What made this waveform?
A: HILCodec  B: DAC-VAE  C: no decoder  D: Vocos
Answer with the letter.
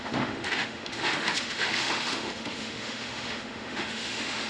B